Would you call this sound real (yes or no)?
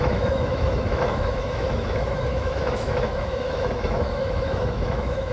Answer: no